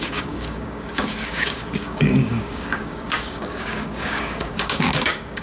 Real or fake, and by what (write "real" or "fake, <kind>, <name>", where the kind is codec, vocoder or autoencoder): fake, codec, DAC